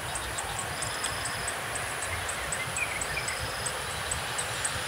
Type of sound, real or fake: real